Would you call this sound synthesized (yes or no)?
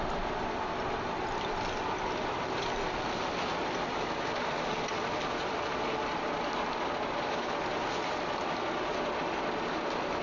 no